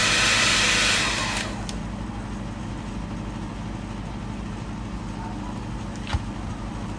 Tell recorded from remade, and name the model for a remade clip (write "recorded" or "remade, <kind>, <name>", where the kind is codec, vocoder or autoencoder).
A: recorded